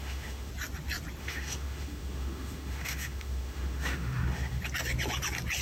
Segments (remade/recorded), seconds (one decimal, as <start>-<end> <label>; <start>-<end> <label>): 0.0-0.5 remade; 0.5-1.2 recorded; 1.2-4.6 remade; 4.6-5.6 recorded